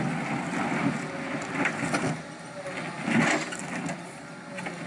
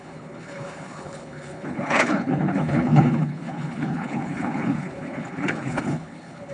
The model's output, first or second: second